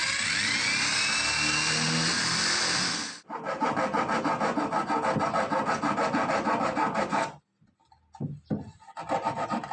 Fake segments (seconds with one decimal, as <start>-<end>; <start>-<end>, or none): none